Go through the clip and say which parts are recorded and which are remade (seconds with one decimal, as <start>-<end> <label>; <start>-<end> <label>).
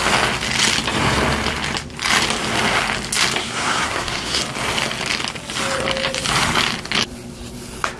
0.0-3.4 recorded; 3.4-4.4 remade; 4.4-8.0 recorded